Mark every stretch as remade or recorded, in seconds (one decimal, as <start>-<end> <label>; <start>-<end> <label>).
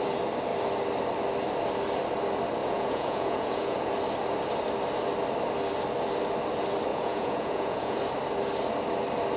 0.0-2.6 recorded; 2.6-3.9 remade; 3.9-6.9 recorded; 6.9-8.0 remade; 8.0-9.4 recorded